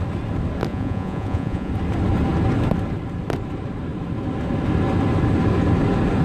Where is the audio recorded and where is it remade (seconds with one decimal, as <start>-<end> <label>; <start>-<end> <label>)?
0.0-0.7 recorded; 0.7-1.7 remade; 1.7-6.2 recorded